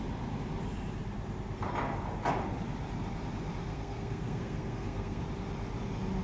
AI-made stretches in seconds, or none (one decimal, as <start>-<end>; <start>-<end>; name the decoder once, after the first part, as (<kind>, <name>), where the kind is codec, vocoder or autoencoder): 3.6-5.2 (codec, SNAC)